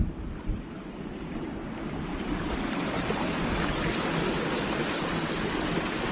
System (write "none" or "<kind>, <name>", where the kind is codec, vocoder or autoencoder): vocoder, BigVGAN v2